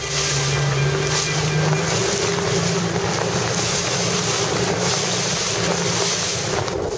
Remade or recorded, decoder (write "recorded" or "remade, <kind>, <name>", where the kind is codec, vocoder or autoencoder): recorded